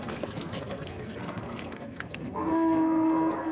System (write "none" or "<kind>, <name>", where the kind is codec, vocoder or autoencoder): codec, SNAC